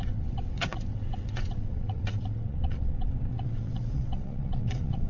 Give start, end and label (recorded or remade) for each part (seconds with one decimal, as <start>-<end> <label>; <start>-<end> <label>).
0.0-5.1 remade